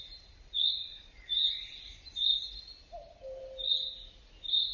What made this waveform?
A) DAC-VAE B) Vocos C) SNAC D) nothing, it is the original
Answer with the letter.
D